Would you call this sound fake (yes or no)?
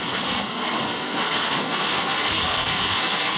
yes